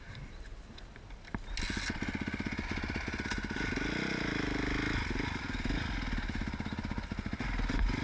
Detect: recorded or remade recorded